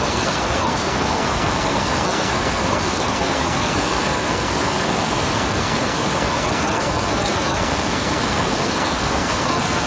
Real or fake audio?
fake